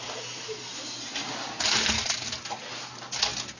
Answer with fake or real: real